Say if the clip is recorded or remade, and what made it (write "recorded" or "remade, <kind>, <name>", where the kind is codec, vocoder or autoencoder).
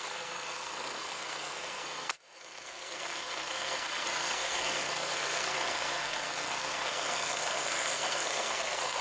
remade, codec, SNAC